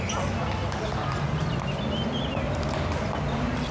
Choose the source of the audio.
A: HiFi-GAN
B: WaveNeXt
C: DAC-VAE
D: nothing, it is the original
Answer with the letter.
D